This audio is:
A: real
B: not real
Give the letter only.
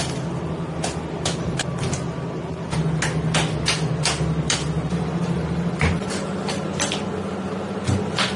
A